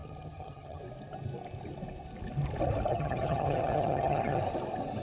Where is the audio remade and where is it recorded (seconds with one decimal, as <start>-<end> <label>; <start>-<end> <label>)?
0.0-0.8 remade; 0.8-2.9 recorded; 2.9-4.4 remade; 4.4-5.0 recorded